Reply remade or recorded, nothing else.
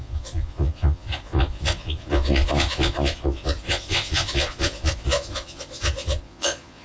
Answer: remade